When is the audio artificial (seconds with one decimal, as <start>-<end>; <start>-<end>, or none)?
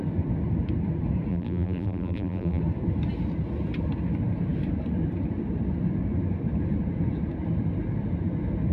1.3-2.6